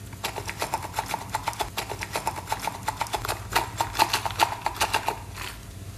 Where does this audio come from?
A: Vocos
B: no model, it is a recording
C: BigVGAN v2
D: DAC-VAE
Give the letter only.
B